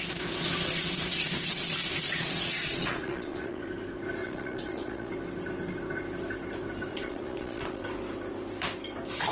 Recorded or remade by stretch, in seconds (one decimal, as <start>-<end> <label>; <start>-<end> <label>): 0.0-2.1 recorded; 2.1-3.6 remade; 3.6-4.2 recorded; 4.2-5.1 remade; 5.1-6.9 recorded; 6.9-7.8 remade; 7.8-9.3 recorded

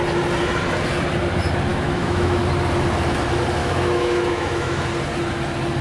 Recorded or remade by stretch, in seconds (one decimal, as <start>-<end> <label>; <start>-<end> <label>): 0.0-1.7 recorded; 1.7-2.4 remade; 2.4-3.6 recorded; 3.6-4.9 remade; 4.9-5.8 recorded

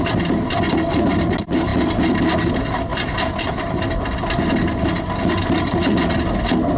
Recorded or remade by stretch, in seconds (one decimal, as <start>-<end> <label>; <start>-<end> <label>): 0.0-6.8 recorded

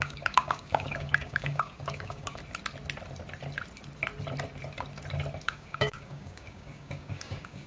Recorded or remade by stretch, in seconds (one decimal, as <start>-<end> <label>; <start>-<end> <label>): 0.0-2.4 remade; 2.4-5.4 recorded; 5.4-7.7 remade

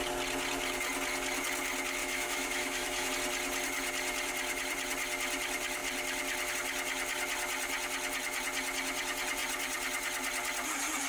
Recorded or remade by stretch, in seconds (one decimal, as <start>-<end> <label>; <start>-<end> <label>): 0.0-2.0 recorded; 2.0-3.1 remade; 3.1-11.1 recorded